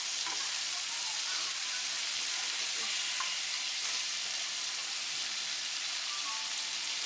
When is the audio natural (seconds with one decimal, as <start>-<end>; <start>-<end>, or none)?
0.0-7.1